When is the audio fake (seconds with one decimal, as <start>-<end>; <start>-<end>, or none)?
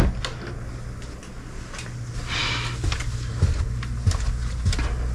none